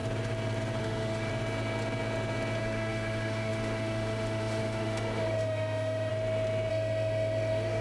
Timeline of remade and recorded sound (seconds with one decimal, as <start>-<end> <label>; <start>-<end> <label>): 0.0-0.8 recorded; 0.8-1.3 remade; 1.3-2.6 recorded; 2.6-6.1 remade; 6.1-6.7 recorded; 6.7-7.8 remade